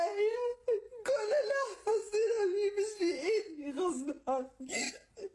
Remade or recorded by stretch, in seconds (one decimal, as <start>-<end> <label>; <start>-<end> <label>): 0.0-1.9 remade; 1.9-3.0 recorded; 3.0-5.3 remade